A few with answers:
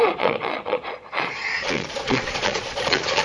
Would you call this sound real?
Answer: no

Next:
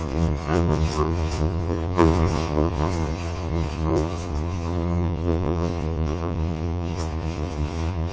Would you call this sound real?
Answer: no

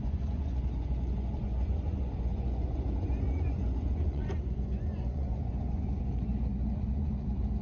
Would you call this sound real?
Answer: no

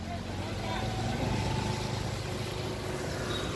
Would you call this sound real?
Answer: yes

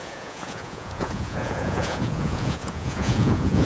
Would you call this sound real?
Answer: no